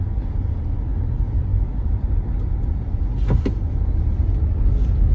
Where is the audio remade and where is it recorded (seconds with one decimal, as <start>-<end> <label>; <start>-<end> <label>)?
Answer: 0.0-5.1 recorded